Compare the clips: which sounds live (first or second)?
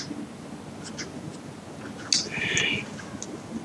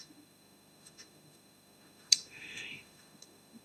first